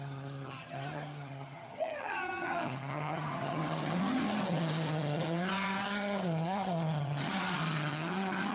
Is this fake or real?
fake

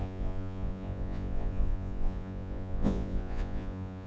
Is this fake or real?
fake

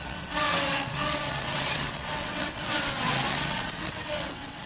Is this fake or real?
fake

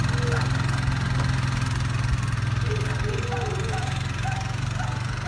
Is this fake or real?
real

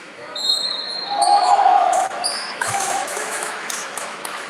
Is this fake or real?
fake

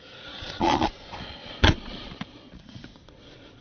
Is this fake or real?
fake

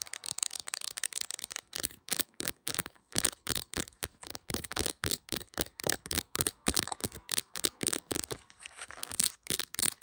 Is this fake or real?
fake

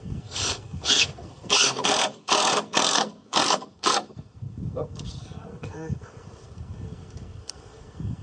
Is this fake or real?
fake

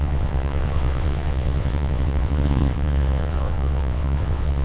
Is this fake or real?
fake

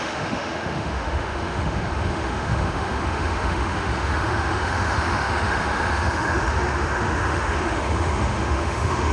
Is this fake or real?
fake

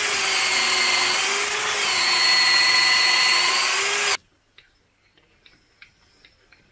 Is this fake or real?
real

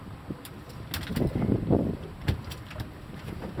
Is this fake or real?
real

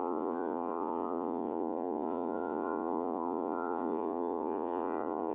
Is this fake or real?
fake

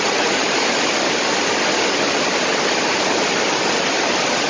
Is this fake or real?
real